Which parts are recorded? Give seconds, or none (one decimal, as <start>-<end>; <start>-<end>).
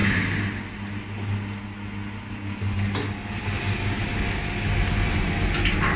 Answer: 0.0-6.0